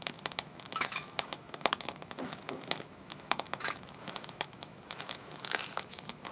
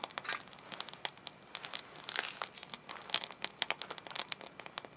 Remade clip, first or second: first